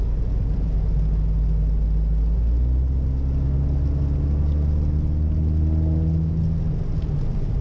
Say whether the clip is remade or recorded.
recorded